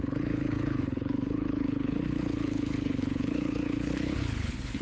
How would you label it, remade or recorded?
remade